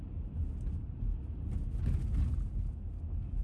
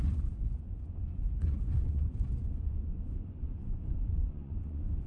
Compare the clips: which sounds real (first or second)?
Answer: first